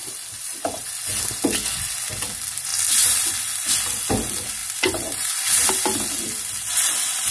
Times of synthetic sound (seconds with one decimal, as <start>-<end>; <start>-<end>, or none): none